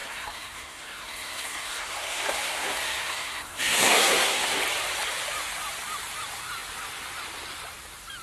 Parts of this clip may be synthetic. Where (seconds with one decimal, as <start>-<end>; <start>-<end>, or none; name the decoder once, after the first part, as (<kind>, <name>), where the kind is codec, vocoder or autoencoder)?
0.0-4.6 (codec, SNAC)